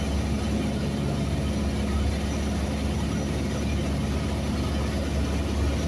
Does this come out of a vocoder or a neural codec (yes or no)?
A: no